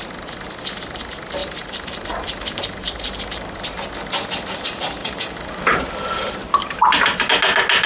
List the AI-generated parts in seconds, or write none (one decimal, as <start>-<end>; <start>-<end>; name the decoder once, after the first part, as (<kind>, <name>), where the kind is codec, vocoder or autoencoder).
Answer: 1.4-3.9 (vocoder, BigVGAN v2); 5.0-5.8; 6.4-7.3